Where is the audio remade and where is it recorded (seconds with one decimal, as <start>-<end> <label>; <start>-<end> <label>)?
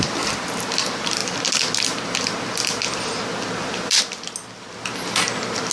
0.0-5.7 recorded